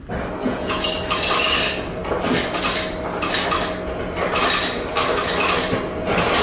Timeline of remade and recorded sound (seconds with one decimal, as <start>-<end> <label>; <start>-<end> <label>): 0.0-0.4 recorded; 0.4-0.9 remade; 0.9-6.4 recorded